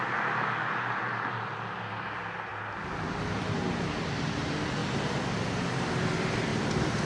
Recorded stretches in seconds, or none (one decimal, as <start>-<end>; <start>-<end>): 0.0-7.1